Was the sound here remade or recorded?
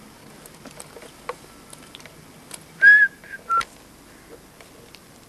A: recorded